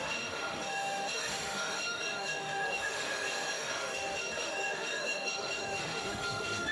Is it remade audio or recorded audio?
remade